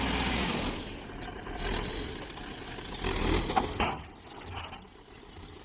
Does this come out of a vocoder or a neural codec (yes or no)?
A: no